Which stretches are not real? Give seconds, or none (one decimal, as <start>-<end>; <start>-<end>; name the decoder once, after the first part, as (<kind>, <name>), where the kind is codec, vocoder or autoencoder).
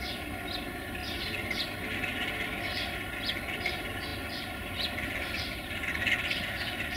none